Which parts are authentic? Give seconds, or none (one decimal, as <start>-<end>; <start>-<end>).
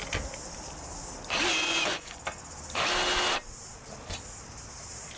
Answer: 0.0-1.6; 2.2-5.2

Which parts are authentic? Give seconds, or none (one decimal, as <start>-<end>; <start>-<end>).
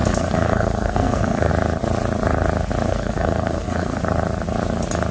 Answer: 1.5-2.9; 4.0-5.1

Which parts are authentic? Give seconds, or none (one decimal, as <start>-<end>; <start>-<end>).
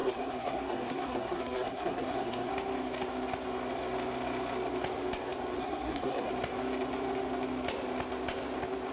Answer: 2.5-5.6; 6.3-8.9